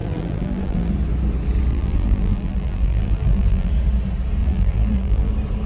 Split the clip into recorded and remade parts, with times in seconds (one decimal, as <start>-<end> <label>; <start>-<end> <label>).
0.0-0.9 remade; 0.9-1.7 recorded; 1.7-3.7 remade; 3.7-4.4 recorded; 4.4-5.3 remade; 5.3-5.7 recorded